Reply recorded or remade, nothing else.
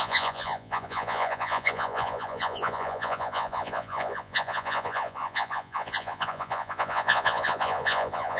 remade